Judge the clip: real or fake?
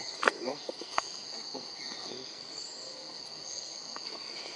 fake